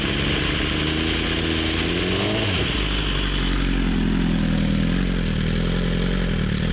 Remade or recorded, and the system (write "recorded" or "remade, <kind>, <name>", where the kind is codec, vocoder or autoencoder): recorded